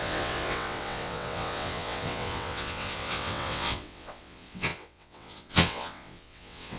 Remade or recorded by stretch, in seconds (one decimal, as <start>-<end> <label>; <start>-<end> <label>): 0.0-6.8 remade